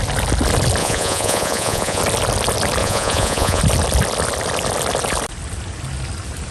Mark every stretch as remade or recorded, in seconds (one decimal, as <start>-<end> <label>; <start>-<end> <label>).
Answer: 0.0-0.8 recorded; 0.8-2.0 remade; 2.0-2.8 recorded; 2.8-3.6 remade; 3.6-6.5 recorded